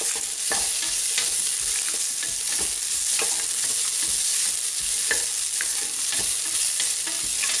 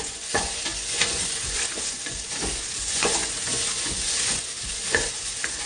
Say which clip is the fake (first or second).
second